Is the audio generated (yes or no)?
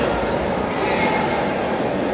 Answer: no